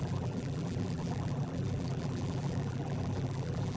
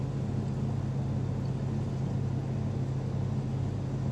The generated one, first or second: first